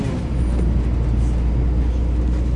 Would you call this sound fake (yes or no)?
no